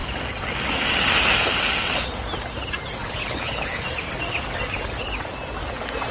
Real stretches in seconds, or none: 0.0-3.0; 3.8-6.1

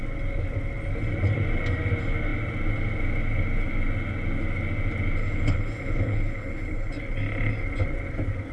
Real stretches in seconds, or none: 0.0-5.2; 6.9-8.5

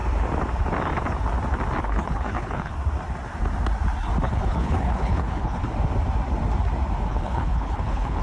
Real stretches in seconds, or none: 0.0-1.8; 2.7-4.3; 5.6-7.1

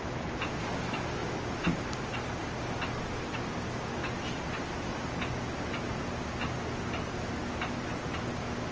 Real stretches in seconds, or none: 0.0-8.7

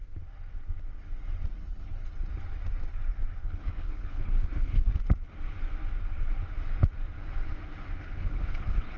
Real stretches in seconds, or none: 0.0-1.6; 2.0-3.4; 4.9-8.0

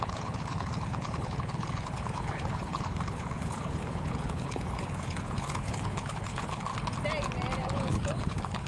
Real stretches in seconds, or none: 6.7-7.6

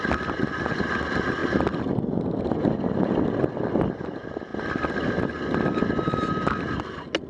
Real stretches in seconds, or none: 0.0-7.3